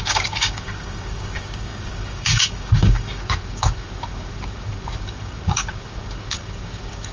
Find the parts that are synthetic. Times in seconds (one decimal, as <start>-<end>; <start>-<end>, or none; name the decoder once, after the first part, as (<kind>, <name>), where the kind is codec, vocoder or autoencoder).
0.0-7.1 (codec, DAC)